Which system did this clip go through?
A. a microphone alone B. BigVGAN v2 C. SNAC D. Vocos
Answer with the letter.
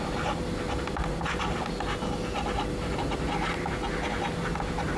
A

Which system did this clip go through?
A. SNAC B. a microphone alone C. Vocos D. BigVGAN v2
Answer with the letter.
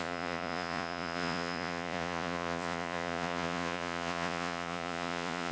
C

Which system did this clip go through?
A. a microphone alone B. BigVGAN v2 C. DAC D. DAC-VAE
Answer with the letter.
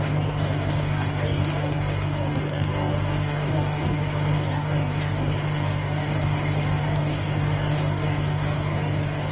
C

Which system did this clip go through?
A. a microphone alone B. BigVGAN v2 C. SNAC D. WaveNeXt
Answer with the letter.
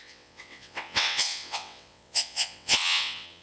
D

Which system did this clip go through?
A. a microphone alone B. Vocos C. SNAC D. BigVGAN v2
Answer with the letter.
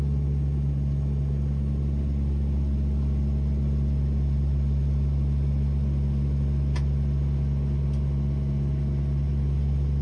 A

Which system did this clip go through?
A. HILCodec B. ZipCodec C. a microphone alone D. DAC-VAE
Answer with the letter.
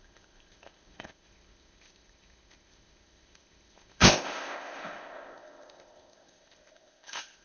B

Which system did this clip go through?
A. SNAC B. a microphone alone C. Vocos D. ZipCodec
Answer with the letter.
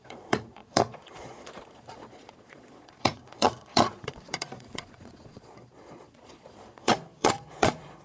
C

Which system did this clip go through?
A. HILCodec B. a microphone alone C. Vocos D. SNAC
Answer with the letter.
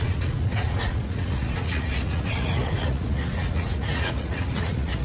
C